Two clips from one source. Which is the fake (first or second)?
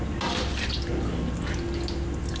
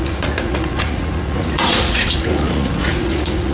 second